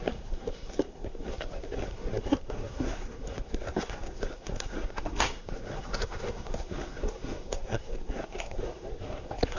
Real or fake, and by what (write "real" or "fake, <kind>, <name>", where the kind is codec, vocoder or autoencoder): fake, codec, SNAC